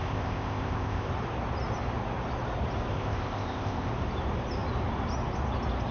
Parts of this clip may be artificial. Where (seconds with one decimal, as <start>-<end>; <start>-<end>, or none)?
0.0-1.1; 2.9-3.9